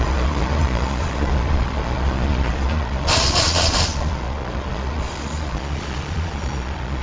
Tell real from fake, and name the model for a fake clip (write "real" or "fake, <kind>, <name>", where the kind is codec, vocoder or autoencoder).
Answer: fake, vocoder, Vocos